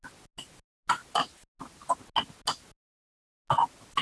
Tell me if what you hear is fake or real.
real